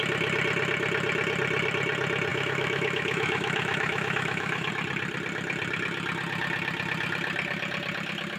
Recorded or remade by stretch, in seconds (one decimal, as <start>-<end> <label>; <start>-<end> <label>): 0.0-2.3 recorded; 2.3-4.7 remade; 4.7-8.4 recorded